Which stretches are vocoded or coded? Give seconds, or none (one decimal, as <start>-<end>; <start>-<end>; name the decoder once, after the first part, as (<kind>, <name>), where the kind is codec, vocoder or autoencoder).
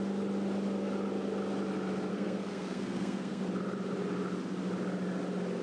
2.1-3.4 (codec, SNAC)